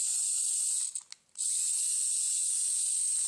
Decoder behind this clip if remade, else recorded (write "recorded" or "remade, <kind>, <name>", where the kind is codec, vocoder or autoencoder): recorded